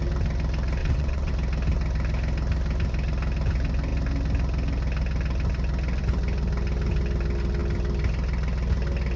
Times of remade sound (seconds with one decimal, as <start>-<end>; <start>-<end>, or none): 0.8-1.3